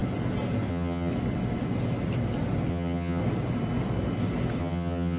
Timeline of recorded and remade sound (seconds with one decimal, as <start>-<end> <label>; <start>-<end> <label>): 0.0-0.7 recorded; 0.7-1.1 remade; 1.1-2.7 recorded; 2.7-3.2 remade; 3.2-4.6 recorded; 4.6-5.2 remade